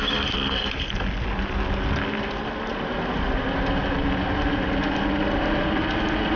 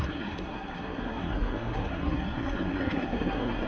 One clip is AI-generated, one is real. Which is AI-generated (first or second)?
second